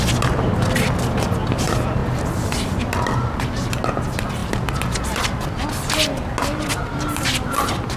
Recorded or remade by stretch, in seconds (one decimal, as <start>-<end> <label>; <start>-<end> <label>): 0.0-8.0 recorded